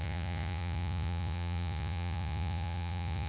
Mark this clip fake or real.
fake